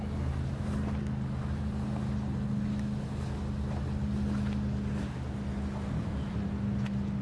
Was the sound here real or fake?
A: real